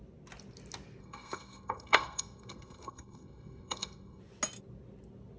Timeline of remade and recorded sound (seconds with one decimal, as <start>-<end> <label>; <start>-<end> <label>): 0.0-1.0 recorded; 1.0-4.2 remade; 4.2-5.4 recorded